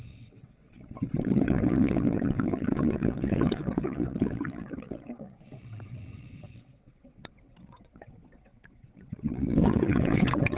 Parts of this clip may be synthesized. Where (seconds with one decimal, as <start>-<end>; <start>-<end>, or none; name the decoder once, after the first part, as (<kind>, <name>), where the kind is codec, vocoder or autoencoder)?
0.0-10.6 (vocoder, WaveNeXt)